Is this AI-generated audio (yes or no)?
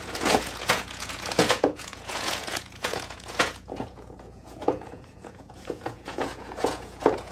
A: yes